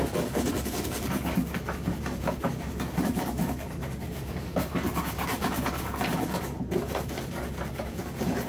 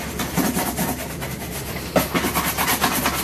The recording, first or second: second